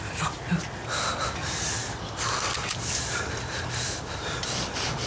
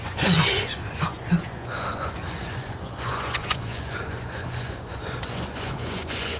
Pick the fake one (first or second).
second